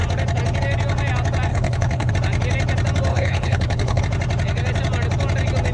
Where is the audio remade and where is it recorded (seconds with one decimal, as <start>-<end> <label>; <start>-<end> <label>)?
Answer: 0.0-1.5 recorded; 1.5-2.1 remade; 2.1-3.1 recorded; 3.1-4.0 remade; 4.0-5.7 recorded